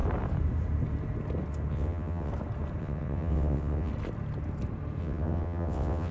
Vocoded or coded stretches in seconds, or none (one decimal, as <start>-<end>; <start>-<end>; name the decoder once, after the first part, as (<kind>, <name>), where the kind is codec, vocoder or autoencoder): 1.7-2.3 (vocoder, WaveNeXt); 2.8-3.9; 5.0-6.1

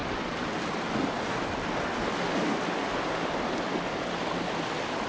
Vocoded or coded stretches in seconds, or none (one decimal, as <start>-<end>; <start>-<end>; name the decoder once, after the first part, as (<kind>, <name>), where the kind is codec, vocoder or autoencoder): none

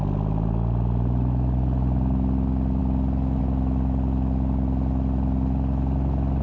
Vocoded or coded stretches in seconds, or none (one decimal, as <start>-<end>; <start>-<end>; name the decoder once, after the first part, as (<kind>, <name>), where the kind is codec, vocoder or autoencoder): none